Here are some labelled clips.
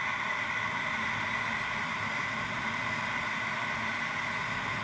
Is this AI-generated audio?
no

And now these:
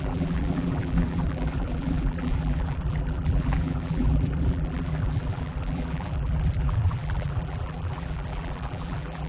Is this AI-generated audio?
yes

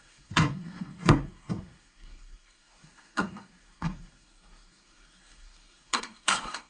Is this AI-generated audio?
yes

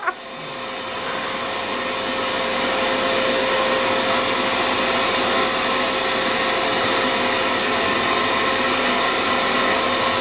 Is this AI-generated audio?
no